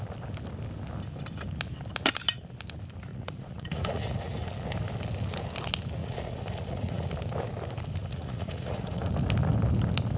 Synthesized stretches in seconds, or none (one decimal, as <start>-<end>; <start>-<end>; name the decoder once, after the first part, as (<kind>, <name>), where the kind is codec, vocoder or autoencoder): 3.1-4.5 (vocoder, Vocos); 6.0-7.1; 8.0-9.1

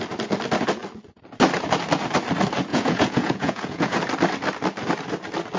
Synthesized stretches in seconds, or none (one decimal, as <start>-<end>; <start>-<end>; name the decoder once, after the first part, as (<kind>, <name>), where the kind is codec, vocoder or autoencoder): 2.7-4.0 (vocoder, Vocos)

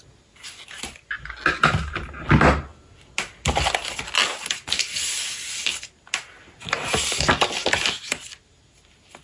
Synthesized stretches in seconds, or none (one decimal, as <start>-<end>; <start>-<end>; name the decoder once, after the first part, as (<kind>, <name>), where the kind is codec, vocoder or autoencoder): none

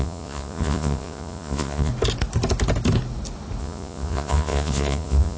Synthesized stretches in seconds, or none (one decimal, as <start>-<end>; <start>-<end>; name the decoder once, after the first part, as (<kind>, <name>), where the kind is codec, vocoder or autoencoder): 0.0-1.9 (vocoder, Vocos); 3.6-5.4

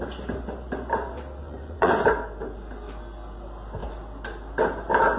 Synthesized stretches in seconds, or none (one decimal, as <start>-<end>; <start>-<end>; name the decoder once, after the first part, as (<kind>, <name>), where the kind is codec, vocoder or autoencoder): 1.4-2.1 (vocoder, Vocos)

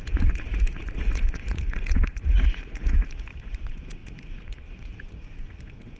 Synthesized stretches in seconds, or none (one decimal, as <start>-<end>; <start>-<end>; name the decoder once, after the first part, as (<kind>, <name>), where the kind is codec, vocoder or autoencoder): 0.0-6.0 (vocoder, Vocos)

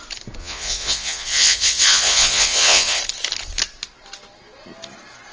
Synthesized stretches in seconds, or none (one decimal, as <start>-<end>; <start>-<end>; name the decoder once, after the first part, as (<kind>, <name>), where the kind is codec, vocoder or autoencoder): 0.4-3.0 (vocoder, Vocos)